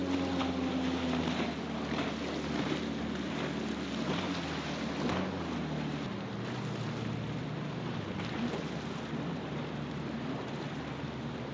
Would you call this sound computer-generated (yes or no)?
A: no